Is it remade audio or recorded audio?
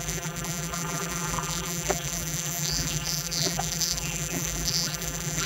remade